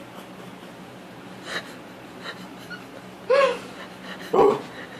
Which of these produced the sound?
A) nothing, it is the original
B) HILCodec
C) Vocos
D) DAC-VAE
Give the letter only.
A